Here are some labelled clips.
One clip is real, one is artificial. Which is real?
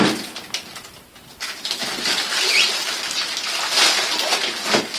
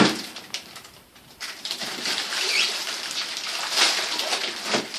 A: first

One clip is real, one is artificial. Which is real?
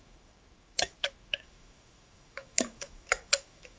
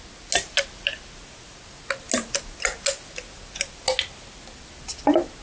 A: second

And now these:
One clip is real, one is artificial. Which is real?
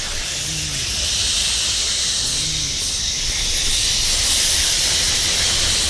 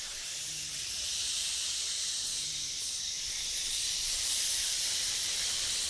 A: first